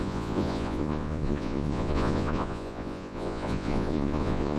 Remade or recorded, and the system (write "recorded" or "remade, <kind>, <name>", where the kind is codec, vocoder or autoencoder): remade, vocoder, Vocos